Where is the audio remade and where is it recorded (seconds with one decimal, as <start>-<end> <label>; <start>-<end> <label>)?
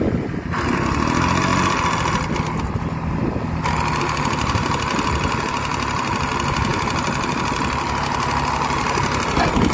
0.0-9.7 recorded